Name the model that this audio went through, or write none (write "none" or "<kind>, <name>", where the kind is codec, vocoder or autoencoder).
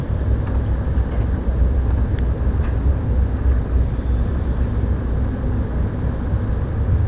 none